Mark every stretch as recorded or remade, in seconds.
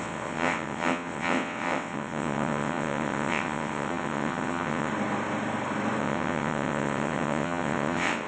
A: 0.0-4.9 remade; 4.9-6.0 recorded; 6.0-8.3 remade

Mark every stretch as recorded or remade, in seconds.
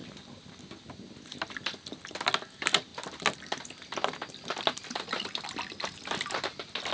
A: 0.0-0.6 remade; 0.6-6.9 recorded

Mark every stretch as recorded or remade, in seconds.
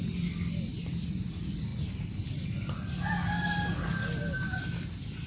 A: 0.0-5.3 recorded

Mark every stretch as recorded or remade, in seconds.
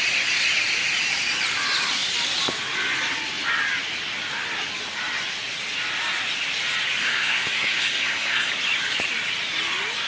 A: 0.0-7.0 recorded; 7.0-8.5 remade; 8.5-10.1 recorded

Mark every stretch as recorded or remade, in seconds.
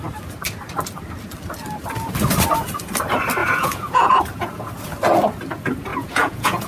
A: 0.0-3.4 recorded; 3.4-4.2 remade; 4.2-5.9 recorded; 5.9-6.7 remade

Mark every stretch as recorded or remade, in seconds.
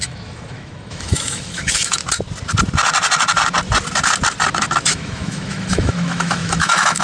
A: 0.0-2.0 remade; 2.0-4.8 recorded; 4.8-7.0 remade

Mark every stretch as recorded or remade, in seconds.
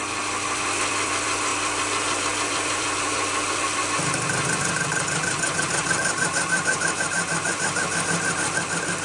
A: 0.0-9.0 remade